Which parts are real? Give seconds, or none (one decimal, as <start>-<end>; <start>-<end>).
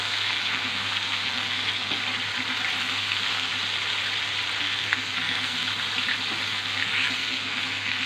2.0-2.8; 3.5-4.6; 5.7-6.5